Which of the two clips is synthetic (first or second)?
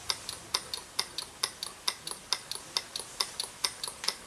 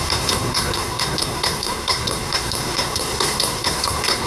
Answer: second